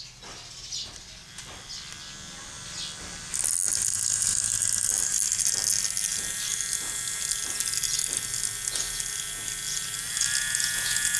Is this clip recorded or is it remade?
recorded